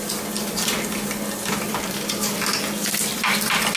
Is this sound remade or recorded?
recorded